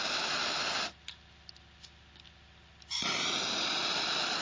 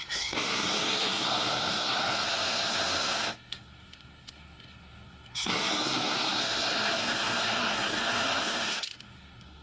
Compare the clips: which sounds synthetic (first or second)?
second